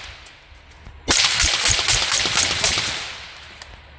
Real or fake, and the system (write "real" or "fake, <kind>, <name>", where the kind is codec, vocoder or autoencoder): real